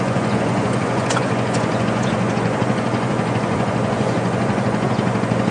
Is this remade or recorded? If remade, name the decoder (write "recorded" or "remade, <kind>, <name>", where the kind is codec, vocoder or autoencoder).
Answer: remade, vocoder, Vocos